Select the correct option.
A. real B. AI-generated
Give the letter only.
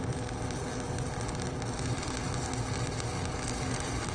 A